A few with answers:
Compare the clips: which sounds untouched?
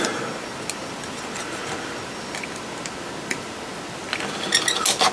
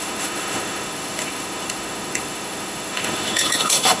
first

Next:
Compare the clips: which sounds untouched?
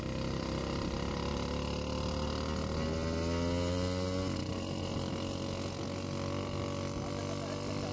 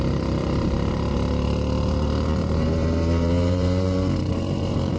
first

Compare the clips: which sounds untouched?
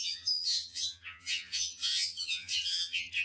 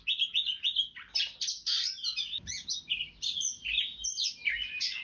second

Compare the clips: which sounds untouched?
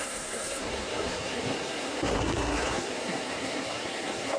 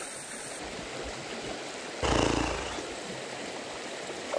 second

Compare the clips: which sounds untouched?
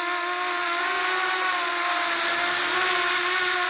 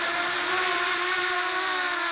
first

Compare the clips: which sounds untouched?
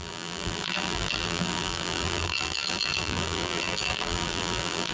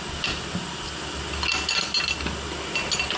second